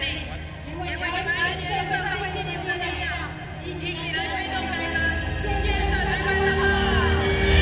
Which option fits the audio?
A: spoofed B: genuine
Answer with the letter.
B